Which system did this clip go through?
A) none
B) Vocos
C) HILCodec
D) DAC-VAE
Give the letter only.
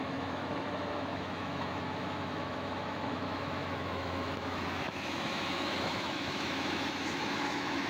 D